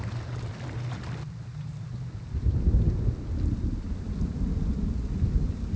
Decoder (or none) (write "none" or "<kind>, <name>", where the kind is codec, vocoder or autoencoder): none